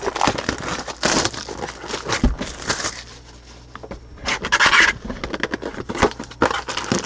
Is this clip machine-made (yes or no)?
no